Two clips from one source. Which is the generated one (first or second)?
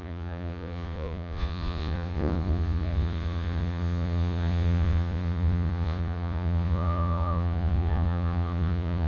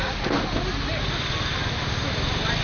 first